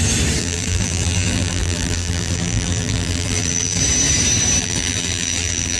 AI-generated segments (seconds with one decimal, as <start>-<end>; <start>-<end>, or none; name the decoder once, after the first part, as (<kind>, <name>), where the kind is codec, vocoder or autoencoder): 0.4-3.8 (vocoder, BigVGAN v2); 4.6-5.8